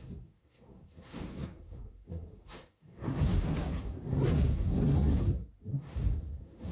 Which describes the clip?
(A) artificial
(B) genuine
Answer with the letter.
A